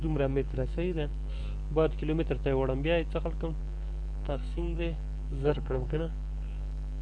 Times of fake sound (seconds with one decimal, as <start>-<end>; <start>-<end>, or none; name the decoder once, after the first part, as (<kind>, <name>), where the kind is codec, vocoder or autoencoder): 0.0-1.4 (codec, SNAC); 3.6-7.0